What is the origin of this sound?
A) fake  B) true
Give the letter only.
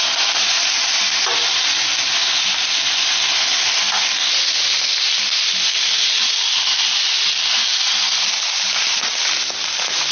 B